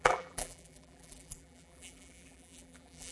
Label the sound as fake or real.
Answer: fake